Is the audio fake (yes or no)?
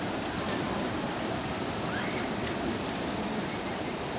yes